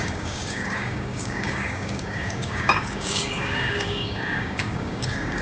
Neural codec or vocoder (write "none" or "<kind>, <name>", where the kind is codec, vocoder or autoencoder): codec, DAC